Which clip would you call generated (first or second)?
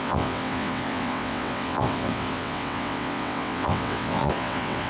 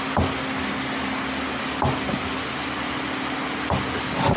first